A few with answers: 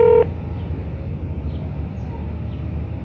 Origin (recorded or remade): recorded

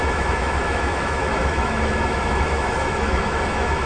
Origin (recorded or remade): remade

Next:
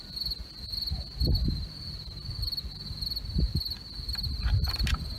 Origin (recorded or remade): recorded